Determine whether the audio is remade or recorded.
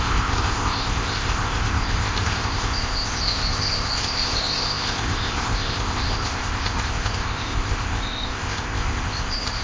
remade